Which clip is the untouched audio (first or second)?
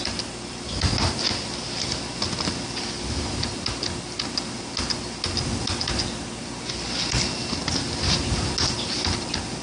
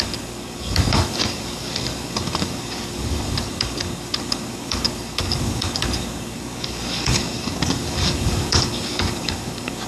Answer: first